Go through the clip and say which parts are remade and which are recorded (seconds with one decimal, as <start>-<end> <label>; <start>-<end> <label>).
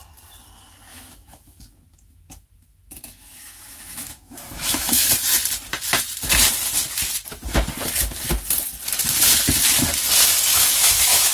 0.0-0.9 recorded; 0.9-5.1 remade; 5.1-10.5 recorded; 10.5-11.3 remade